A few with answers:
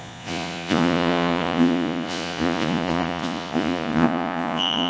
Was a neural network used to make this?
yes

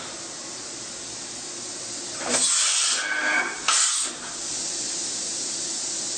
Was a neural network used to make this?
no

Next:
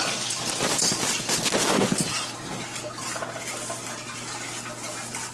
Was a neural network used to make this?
no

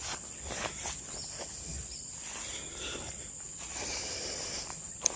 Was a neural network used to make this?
no